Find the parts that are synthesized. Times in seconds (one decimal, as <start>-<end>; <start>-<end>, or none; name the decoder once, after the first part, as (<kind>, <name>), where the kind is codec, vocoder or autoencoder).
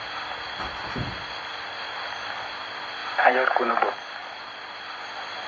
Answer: 3.0-3.7 (vocoder, BigVGAN v2); 4.2-4.9